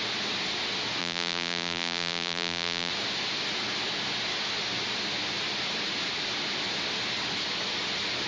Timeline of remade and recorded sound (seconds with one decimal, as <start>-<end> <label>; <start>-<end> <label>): 0.0-1.0 recorded; 1.0-2.9 remade; 2.9-8.3 recorded